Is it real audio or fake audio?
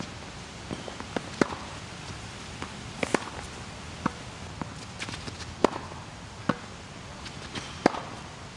real